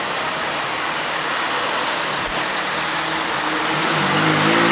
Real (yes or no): yes